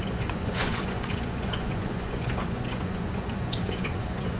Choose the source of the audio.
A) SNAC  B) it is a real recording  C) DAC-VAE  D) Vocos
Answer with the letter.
D